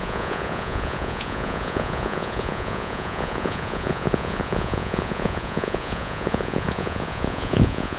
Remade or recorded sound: remade